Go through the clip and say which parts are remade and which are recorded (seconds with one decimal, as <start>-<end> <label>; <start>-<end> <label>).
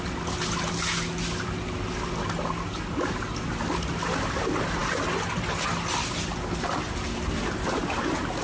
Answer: 0.0-8.4 recorded